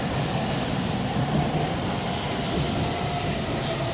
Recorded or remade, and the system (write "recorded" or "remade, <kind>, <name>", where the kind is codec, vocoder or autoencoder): recorded